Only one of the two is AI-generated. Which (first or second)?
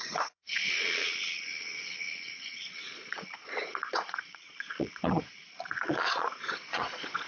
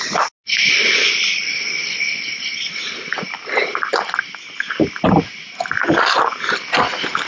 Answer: first